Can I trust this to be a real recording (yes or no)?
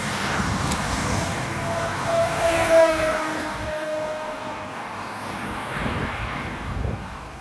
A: no